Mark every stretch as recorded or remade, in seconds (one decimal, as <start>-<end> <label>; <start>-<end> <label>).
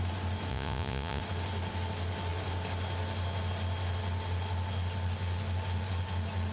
0.0-0.5 recorded; 0.5-1.2 remade; 1.2-6.5 recorded